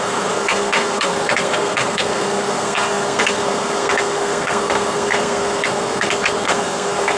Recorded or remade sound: remade